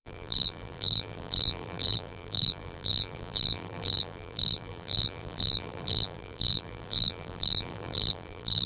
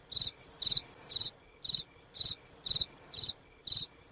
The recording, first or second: second